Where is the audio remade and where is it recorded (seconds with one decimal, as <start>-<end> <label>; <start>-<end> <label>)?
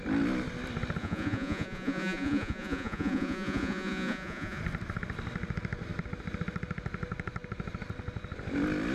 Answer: 0.0-1.0 recorded; 1.0-4.6 remade; 4.6-8.9 recorded